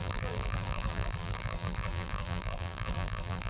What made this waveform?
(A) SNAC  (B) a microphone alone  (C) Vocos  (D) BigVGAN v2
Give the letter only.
D